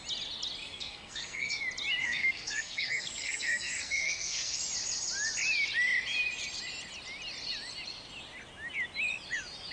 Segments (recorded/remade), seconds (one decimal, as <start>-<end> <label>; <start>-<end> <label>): 0.0-0.6 recorded; 0.6-1.6 remade; 1.6-2.0 recorded; 2.0-4.6 remade; 4.6-9.7 recorded